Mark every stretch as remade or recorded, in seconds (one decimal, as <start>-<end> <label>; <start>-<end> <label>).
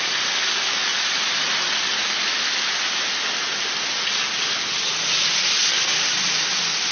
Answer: 0.0-6.9 recorded